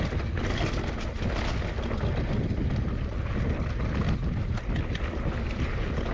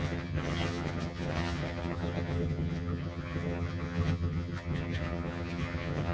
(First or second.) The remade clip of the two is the second